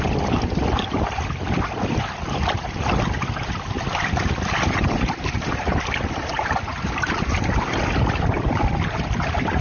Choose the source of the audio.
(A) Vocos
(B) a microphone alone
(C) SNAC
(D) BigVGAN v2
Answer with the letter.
B